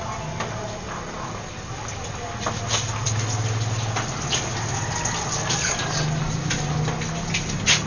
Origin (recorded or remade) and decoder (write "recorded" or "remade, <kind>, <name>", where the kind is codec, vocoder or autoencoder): recorded